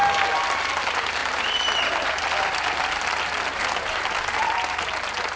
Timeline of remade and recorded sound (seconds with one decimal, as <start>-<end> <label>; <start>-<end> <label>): 0.0-5.4 recorded